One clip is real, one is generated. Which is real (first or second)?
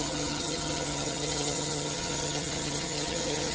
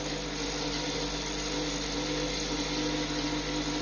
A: second